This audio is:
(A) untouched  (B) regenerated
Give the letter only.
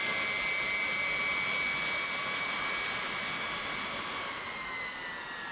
A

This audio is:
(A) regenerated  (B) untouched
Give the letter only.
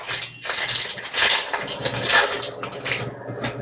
B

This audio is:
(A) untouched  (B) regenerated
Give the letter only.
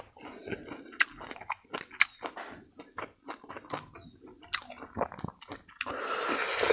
A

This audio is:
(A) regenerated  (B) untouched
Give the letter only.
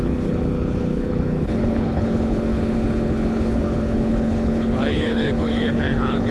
A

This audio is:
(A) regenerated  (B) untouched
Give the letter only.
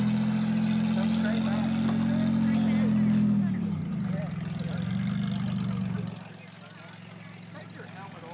B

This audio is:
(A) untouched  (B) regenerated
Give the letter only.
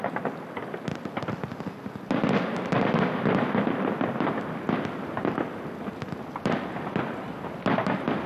A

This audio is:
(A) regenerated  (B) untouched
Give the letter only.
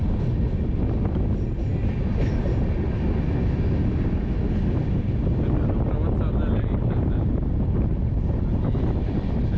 B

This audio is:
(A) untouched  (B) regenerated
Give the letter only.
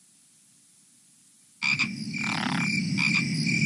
A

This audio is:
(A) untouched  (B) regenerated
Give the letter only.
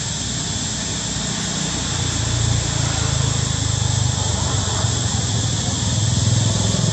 A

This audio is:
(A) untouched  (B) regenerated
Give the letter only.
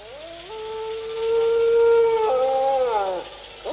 A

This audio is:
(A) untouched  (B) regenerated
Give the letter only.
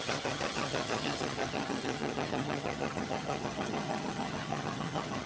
B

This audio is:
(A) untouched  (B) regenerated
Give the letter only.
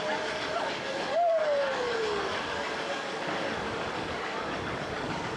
B